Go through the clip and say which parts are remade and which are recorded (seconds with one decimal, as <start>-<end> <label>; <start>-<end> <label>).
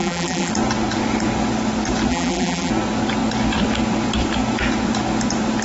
0.0-0.5 remade; 0.5-2.1 recorded; 2.1-2.7 remade; 2.7-5.6 recorded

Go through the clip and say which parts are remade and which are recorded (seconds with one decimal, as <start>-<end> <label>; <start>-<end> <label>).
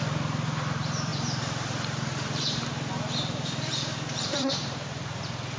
0.0-5.6 remade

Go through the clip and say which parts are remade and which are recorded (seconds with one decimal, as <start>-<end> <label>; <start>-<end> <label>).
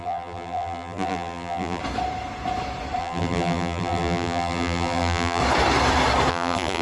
0.0-1.8 remade; 1.8-3.0 recorded; 3.0-5.4 remade; 5.4-6.3 recorded; 6.3-6.8 remade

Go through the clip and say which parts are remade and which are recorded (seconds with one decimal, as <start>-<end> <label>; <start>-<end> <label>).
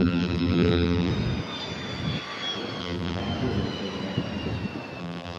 0.0-1.1 remade; 1.1-2.8 recorded; 2.8-3.2 remade; 3.2-5.0 recorded; 5.0-5.4 remade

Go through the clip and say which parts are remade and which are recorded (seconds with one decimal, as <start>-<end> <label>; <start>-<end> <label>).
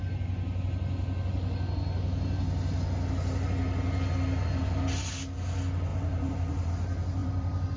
0.0-5.9 recorded; 5.9-6.7 remade; 6.7-7.2 recorded; 7.2-7.8 remade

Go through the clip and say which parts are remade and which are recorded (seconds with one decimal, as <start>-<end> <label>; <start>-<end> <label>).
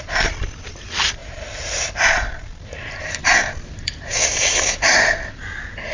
0.0-1.2 recorded; 1.2-4.7 remade; 4.7-5.9 recorded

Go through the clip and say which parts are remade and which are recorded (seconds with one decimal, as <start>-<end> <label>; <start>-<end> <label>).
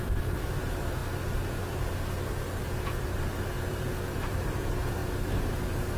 0.0-1.0 remade; 1.0-2.6 recorded; 2.6-5.0 remade; 5.0-6.0 recorded